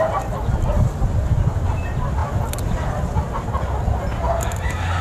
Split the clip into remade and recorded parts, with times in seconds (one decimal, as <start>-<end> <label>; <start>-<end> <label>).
0.0-5.0 recorded